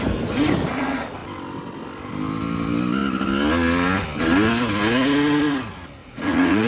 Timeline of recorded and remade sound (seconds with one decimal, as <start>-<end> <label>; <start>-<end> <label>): 0.0-6.0 recorded; 6.0-6.7 remade

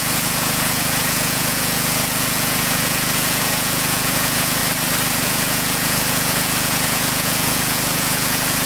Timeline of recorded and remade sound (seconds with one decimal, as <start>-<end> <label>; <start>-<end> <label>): 0.0-4.6 remade; 4.6-5.2 recorded; 5.2-8.7 remade

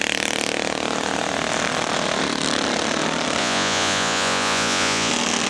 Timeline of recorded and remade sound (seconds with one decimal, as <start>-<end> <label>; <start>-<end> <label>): 0.0-3.4 recorded; 3.4-5.1 remade; 5.1-5.5 recorded

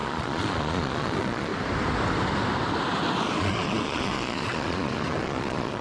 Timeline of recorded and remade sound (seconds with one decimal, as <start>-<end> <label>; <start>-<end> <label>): 0.0-1.5 remade; 1.5-3.4 recorded; 3.4-5.8 remade